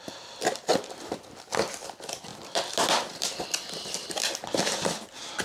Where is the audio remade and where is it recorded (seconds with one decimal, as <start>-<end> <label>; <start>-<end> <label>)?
0.0-5.4 recorded